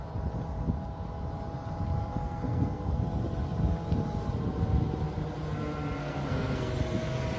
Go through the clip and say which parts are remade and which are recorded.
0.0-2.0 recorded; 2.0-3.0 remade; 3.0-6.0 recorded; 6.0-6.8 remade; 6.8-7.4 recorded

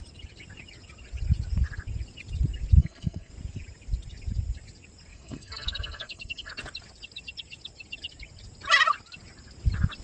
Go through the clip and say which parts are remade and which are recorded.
0.0-2.8 recorded; 2.8-3.3 remade; 3.3-5.1 recorded; 5.1-6.5 remade; 6.5-10.0 recorded